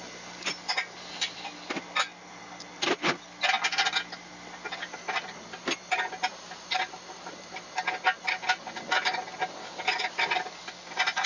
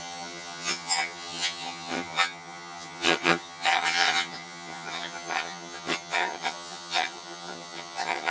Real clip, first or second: first